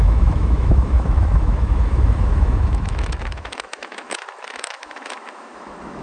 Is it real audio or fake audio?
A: fake